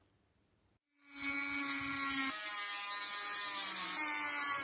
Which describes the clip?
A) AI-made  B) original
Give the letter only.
B